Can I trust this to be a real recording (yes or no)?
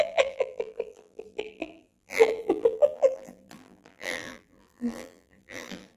no